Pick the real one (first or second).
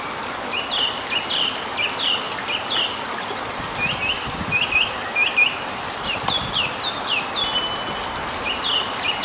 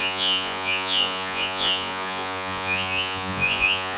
first